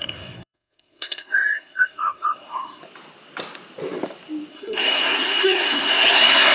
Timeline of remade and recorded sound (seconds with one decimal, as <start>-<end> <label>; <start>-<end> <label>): 0.0-2.8 remade; 2.8-4.5 recorded; 4.5-6.5 remade